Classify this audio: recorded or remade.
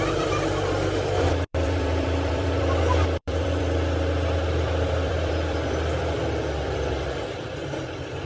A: remade